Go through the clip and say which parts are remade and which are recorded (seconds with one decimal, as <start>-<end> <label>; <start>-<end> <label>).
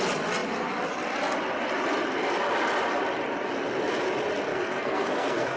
0.0-4.5 recorded; 4.5-5.6 remade